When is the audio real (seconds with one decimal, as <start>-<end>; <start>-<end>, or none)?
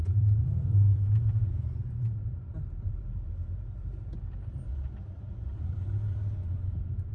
4.1-5.3